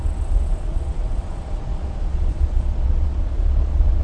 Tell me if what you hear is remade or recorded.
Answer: remade